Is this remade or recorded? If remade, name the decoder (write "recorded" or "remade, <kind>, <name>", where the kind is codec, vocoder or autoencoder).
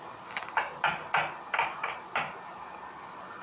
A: recorded